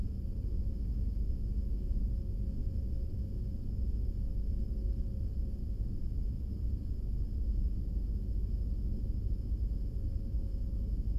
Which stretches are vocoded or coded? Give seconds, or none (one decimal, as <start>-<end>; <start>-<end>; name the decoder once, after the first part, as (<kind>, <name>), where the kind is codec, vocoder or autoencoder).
none